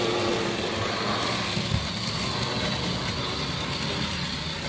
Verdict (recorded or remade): recorded